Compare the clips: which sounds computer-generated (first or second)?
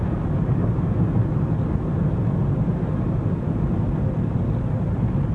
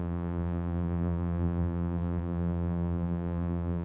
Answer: second